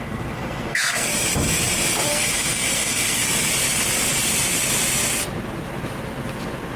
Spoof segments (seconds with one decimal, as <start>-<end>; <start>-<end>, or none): 0.0-1.1; 2.1-3.2